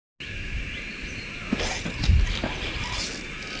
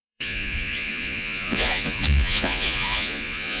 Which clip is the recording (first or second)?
first